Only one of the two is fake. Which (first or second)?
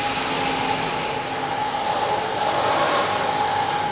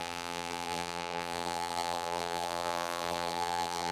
second